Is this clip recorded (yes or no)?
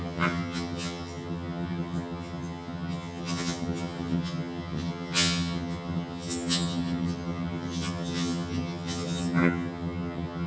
no